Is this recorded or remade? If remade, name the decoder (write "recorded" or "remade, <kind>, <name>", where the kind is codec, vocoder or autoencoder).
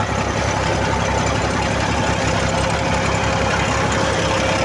recorded